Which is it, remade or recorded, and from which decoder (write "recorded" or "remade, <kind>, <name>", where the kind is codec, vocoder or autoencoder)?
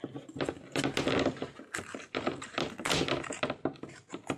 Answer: recorded